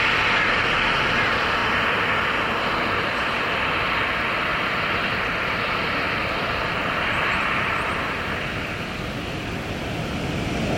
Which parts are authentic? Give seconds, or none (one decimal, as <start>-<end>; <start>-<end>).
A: 0.0-4.5; 8.3-10.8